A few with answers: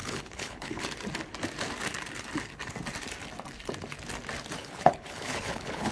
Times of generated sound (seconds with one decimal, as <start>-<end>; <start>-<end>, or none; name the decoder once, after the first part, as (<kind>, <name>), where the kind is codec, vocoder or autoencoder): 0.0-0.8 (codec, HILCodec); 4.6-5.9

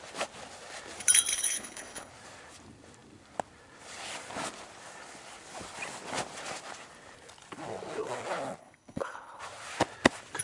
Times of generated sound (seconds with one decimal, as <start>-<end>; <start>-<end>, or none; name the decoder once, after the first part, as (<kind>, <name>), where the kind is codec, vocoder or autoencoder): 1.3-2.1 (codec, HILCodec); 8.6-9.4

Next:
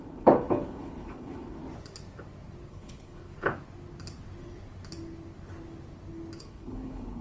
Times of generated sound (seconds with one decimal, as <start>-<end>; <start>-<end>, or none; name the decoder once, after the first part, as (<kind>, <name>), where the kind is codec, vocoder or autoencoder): 0.0-1.6 (codec, HILCodec); 2.7-3.3; 6.4-7.2

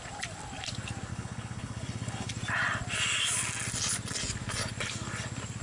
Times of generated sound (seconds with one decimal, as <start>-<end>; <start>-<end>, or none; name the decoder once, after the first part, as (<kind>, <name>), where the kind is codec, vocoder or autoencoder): 1.1-2.3 (codec, HILCodec)